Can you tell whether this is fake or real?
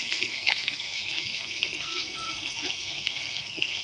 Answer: fake